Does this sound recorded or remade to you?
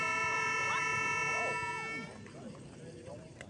recorded